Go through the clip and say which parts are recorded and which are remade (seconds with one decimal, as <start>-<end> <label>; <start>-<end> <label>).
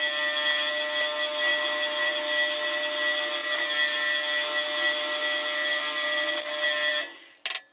0.0-7.7 recorded